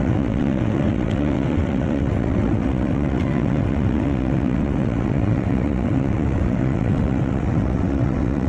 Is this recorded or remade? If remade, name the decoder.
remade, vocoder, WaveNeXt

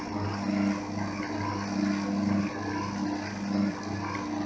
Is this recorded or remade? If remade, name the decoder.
recorded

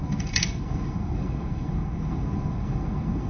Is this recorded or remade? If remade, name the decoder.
remade, codec, SNAC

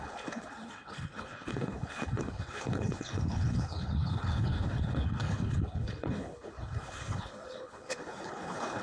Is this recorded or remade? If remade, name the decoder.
remade, codec, HILCodec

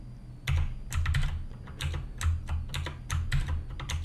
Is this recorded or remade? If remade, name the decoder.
recorded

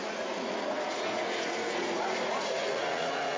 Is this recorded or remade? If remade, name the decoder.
remade, vocoder, Vocos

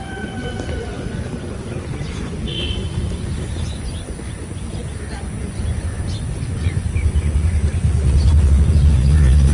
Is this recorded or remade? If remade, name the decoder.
remade, vocoder, Vocos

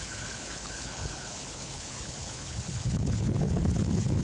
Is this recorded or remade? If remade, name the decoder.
remade, codec, HILCodec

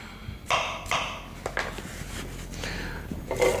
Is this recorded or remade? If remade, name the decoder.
recorded